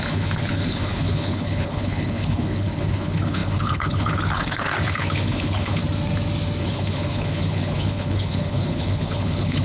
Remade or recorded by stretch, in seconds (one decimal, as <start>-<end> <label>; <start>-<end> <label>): 0.0-5.8 remade; 5.8-6.6 recorded; 6.6-9.6 remade